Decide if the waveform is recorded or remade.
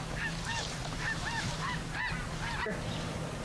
remade